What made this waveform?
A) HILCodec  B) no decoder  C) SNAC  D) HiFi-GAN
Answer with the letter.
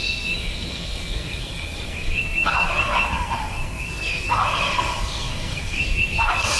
C